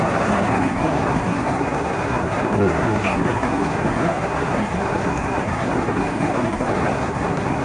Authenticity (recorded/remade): remade